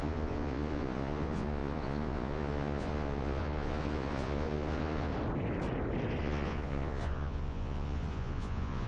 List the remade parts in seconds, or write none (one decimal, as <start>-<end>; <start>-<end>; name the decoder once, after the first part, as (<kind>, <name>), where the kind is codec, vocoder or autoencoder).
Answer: 0.0-5.1 (vocoder, Vocos); 6.2-8.9